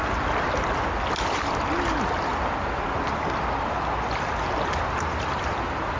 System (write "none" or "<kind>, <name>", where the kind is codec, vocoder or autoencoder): none